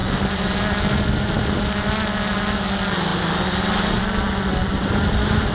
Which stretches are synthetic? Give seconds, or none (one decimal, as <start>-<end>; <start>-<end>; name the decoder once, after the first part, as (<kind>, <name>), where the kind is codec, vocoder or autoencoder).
none